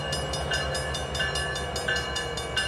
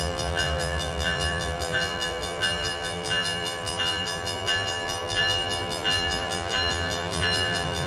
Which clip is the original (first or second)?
first